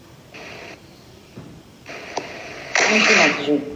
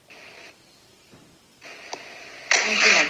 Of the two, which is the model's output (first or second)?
first